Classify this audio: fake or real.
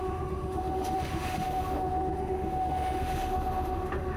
fake